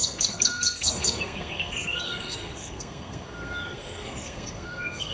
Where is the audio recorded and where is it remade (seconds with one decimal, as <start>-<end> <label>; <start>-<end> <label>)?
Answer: 0.0-5.1 remade